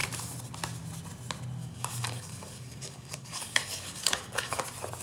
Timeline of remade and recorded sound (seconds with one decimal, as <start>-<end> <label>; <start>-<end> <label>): 0.0-1.6 recorded; 1.6-4.6 remade; 4.6-5.0 recorded